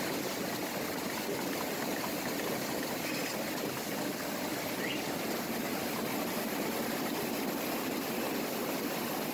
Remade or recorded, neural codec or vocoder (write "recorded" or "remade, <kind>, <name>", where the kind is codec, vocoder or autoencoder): recorded